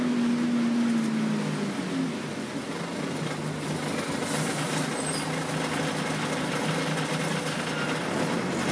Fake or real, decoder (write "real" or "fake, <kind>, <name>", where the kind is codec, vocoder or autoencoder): real